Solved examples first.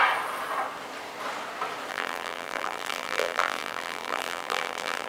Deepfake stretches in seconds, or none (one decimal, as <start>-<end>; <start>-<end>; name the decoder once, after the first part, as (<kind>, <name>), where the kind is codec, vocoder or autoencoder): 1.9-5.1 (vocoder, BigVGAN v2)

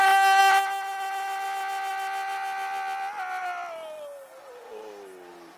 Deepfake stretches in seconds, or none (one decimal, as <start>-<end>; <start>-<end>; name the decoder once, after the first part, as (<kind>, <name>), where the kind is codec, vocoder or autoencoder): none

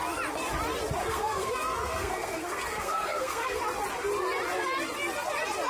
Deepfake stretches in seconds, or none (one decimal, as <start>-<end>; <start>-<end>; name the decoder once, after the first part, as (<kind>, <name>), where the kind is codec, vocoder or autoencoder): 1.0-3.6 (codec, SNAC)

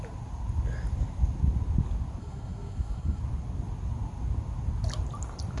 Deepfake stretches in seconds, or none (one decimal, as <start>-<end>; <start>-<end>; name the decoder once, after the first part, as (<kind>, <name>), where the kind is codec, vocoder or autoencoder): 2.2-3.2 (codec, SNAC)

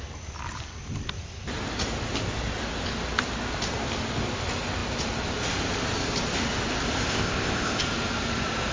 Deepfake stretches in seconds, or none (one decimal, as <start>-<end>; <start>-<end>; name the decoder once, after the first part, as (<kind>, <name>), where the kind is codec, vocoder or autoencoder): 7.1-7.8 (codec, ZipCodec)

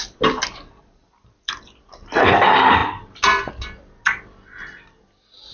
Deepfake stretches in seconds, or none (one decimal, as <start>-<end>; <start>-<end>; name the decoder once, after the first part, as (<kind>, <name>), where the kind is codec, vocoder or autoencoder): none

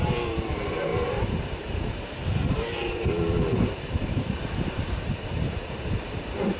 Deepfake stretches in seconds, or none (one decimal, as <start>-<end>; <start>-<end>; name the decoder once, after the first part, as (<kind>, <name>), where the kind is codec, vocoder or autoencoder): 0.0-6.6 (vocoder, BigVGAN v2)

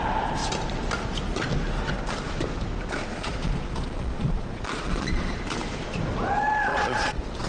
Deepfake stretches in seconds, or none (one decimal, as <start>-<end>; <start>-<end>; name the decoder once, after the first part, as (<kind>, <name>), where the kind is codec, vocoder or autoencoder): 3.1-5.4 (vocoder, Vocos); 6.7-7.5